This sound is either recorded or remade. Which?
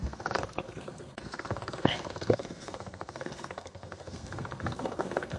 remade